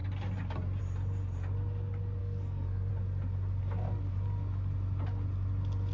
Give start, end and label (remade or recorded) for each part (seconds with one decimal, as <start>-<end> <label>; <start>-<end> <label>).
0.0-2.2 recorded; 2.2-2.9 remade; 2.9-5.9 recorded